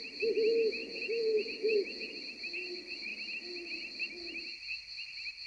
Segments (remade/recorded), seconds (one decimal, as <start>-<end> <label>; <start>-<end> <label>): 0.0-0.8 recorded; 0.8-2.1 remade; 2.1-5.5 recorded